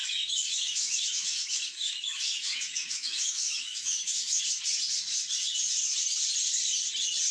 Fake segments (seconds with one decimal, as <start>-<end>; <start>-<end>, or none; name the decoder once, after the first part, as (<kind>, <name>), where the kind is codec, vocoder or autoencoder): 0.0-4.4 (autoencoder, DAC-VAE)